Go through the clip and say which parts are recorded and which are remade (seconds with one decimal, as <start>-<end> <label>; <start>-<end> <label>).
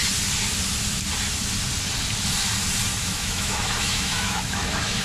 0.0-3.0 recorded; 3.0-5.0 remade